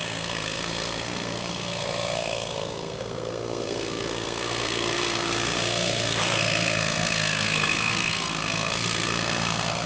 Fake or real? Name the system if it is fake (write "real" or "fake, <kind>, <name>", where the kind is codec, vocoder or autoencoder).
fake, codec, SNAC